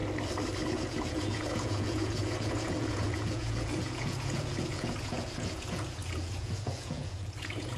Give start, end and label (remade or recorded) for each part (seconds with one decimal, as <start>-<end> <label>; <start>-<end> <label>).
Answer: 0.0-0.7 recorded; 0.7-7.8 remade